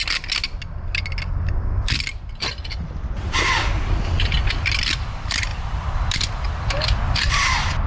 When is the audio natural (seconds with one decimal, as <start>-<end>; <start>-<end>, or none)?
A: 0.0-7.9